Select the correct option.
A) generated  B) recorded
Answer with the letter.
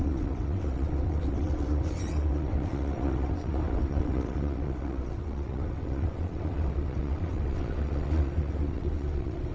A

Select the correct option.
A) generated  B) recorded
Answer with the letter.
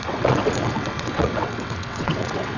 A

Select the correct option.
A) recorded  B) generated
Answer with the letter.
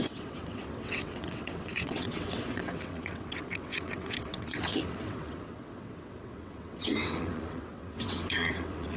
B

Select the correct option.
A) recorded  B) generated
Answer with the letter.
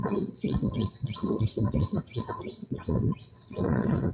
B